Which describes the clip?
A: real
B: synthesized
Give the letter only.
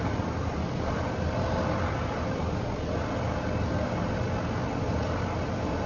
A